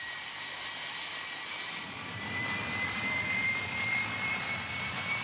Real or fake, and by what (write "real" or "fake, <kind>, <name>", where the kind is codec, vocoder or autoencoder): fake, vocoder, BigVGAN v2